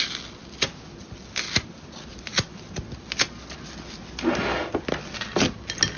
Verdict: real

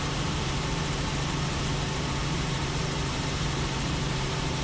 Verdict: fake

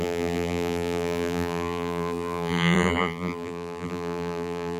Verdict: fake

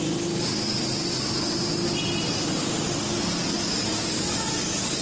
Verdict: real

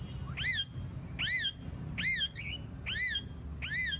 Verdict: real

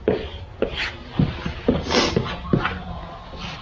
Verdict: real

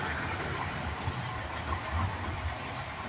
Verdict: fake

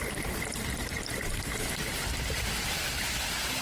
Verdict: real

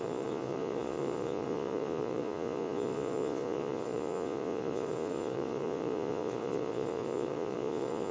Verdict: fake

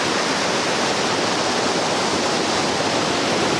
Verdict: real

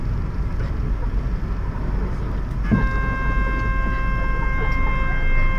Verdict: real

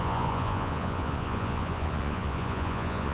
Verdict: fake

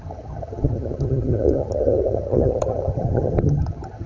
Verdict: fake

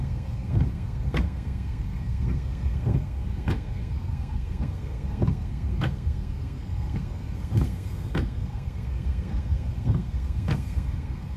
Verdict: fake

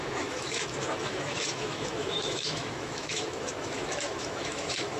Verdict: fake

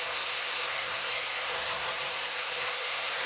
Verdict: fake